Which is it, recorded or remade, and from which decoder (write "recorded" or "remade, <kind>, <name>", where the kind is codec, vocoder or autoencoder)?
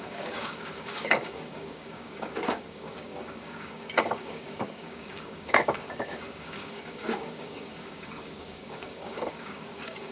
remade, codec, DAC